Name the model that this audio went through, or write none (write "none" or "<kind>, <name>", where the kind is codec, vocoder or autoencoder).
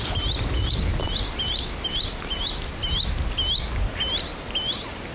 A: none